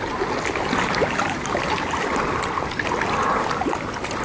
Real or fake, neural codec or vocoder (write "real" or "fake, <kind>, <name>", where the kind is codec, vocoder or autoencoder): real